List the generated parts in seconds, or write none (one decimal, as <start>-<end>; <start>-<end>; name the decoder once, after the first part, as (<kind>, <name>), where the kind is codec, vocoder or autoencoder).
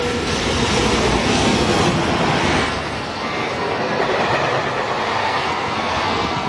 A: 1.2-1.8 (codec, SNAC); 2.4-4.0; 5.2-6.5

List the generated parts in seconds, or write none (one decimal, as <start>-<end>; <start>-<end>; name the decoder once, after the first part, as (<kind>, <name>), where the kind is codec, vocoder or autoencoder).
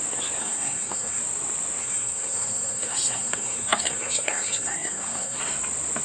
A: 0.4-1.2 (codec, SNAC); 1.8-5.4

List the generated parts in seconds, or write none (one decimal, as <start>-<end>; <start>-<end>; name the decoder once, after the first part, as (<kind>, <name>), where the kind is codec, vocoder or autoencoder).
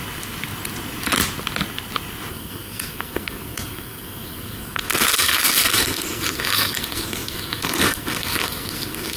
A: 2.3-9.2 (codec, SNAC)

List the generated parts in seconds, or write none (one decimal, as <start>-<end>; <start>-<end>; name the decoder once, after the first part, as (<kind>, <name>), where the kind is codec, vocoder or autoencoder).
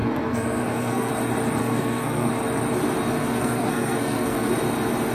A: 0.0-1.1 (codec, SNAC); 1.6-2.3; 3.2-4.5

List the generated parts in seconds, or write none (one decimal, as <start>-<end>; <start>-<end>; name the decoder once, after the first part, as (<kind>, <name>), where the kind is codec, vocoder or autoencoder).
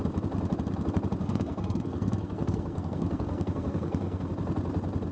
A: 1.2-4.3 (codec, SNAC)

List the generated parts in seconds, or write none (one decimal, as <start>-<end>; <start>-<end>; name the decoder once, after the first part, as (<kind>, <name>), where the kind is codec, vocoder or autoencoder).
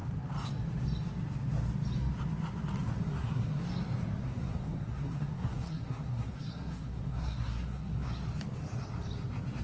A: 3.0-3.6 (codec, SNAC); 4.2-8.1